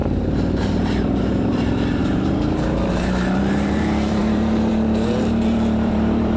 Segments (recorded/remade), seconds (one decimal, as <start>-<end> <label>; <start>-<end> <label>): 0.0-6.4 remade